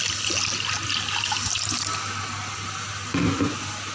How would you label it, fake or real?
real